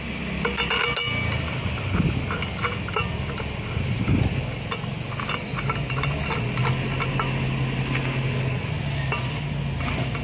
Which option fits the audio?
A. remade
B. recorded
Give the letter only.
B